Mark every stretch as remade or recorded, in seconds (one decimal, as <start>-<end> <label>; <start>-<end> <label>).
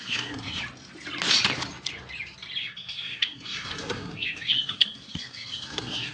0.0-0.6 remade; 0.6-2.6 recorded; 2.6-6.1 remade